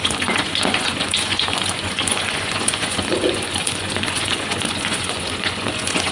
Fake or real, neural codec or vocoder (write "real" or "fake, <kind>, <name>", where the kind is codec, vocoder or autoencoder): fake, vocoder, Vocos